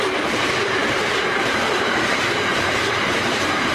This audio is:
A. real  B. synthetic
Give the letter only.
B